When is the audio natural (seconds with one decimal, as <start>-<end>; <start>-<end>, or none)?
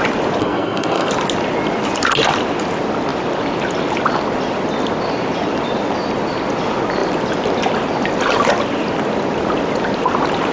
0.0-0.4; 1.1-10.5